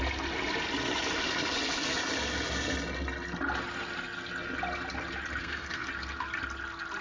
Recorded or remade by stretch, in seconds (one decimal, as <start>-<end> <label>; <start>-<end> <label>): 0.0-5.4 recorded; 5.4-5.9 remade; 5.9-7.0 recorded